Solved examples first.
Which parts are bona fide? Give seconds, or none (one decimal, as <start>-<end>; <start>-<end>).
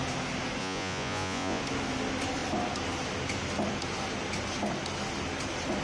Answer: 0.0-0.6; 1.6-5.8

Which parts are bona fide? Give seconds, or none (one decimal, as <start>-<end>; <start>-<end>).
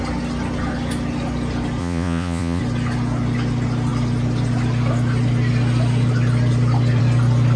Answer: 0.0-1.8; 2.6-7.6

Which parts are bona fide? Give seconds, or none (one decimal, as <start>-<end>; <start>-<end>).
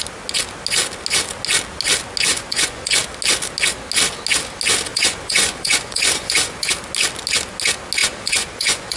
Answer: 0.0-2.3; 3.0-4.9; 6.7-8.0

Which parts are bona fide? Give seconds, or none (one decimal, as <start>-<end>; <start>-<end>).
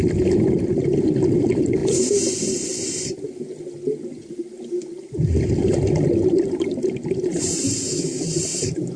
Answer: 0.0-9.0